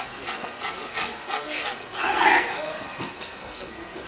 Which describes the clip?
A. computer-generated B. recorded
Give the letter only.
A